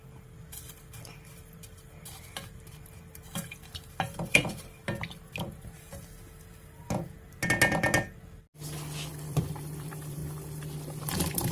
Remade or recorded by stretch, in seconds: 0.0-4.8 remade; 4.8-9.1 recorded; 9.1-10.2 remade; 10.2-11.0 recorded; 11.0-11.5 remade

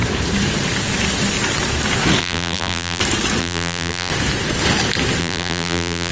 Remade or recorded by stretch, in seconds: 0.0-2.2 recorded; 2.2-3.0 remade; 3.0-3.4 recorded; 3.4-4.1 remade; 4.1-5.2 recorded; 5.2-6.1 remade

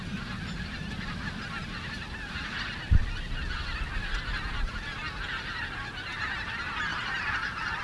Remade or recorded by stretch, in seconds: 0.0-6.9 recorded; 6.9-7.8 remade

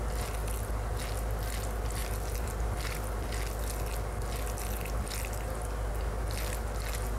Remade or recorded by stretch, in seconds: 0.0-7.2 recorded

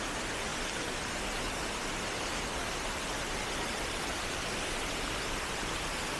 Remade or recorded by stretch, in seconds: 0.0-1.8 recorded; 1.8-5.5 remade; 5.5-6.2 recorded

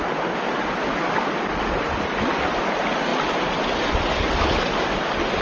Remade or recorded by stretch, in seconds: 0.0-5.4 recorded

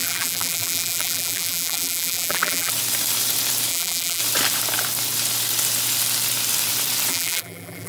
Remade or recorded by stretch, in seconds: 0.0-2.7 remade; 2.7-3.7 recorded; 3.7-4.2 remade; 4.2-7.1 recorded; 7.1-7.9 remade